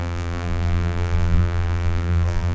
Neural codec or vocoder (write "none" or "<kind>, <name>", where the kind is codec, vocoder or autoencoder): vocoder, BigVGAN v2